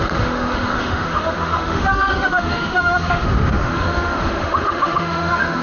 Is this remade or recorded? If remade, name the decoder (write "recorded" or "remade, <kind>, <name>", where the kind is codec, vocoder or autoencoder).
remade, autoencoder, DAC-VAE